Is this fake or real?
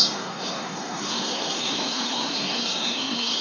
fake